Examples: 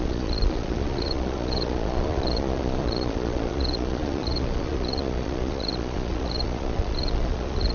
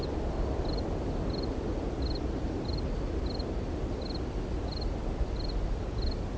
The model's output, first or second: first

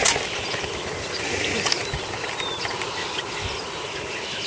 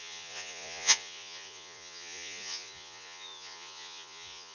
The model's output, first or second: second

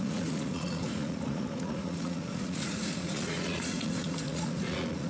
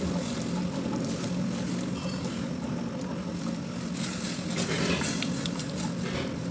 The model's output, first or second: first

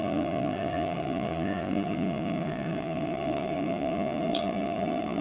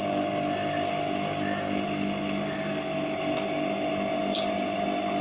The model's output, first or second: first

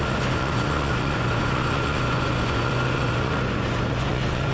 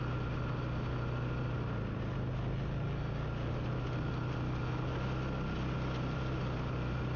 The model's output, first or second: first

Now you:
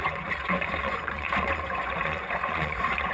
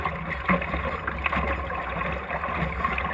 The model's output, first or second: first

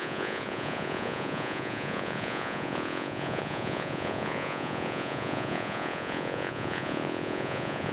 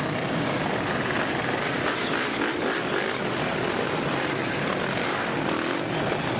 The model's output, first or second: first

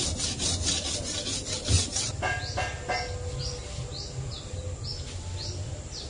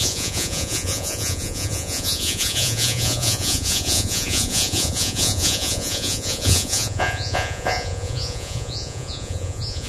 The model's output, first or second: second